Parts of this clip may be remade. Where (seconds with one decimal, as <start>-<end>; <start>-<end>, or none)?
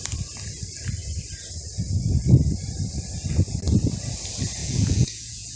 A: 4.6-5.6